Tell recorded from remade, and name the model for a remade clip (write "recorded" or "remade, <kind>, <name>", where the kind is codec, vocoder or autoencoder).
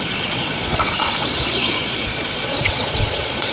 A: remade, vocoder, Vocos